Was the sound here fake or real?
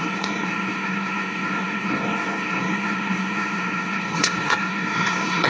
fake